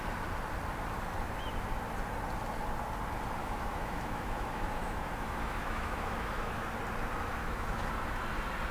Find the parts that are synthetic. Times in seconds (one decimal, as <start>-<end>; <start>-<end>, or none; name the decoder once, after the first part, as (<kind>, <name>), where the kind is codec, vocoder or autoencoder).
3.4-6.6 (autoencoder, DAC-VAE); 7.4-7.9